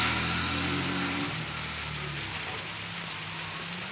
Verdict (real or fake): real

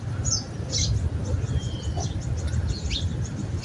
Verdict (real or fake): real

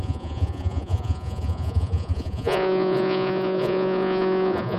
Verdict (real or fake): fake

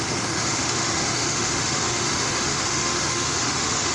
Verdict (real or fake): fake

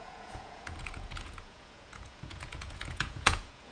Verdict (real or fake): fake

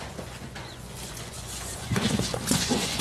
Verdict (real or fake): fake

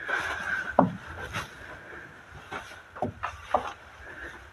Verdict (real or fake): fake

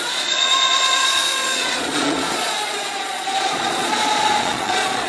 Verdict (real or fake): fake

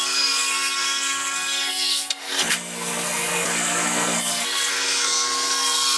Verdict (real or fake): fake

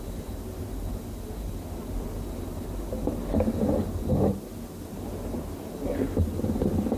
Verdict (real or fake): real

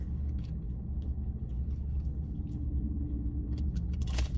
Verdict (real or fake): fake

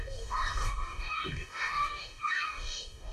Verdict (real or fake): fake